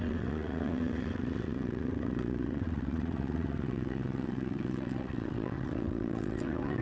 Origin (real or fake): fake